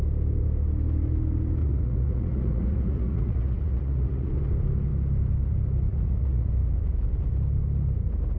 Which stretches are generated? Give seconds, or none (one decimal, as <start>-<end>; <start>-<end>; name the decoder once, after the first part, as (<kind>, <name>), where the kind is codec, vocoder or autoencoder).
1.6-4.3 (vocoder, Vocos); 5.9-6.5